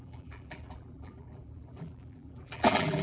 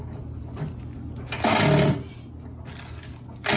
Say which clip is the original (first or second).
second